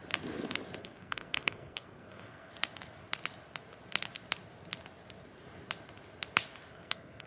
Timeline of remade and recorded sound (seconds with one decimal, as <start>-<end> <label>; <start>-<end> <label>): 0.0-0.8 recorded; 0.8-2.5 remade; 2.5-6.7 recorded; 6.7-7.3 remade